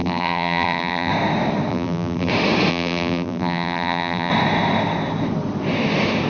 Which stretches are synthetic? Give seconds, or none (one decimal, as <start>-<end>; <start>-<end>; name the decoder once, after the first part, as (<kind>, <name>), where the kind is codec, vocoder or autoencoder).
0.0-1.1 (vocoder, BigVGAN v2); 1.7-2.3; 2.7-4.3